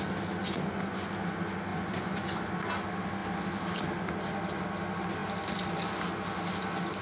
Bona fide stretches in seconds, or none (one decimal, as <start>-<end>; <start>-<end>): 0.0-0.4; 1.1-1.7; 2.4-7.0